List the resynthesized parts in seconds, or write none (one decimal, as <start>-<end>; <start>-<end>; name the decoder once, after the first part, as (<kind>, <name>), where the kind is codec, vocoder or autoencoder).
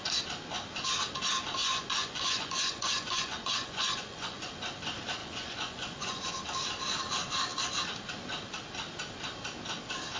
1.6-4.5 (vocoder, Vocos); 5.2-6.3